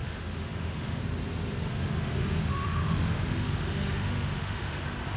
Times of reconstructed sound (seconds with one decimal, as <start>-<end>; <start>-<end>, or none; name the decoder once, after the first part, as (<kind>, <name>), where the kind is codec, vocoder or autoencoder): 0.0-1.0 (autoencoder, DAC-VAE); 1.7-4.8